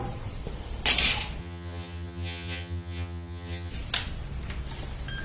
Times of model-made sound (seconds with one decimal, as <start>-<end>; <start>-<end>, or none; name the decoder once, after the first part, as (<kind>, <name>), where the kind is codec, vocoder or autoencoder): 1.4-3.7 (vocoder, HiFi-GAN)